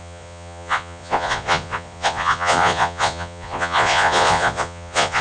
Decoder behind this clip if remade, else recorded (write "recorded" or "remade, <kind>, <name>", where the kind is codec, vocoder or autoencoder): remade, vocoder, Vocos